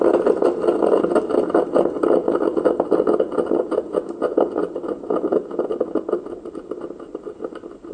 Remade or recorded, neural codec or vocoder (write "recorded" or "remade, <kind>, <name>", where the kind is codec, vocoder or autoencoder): recorded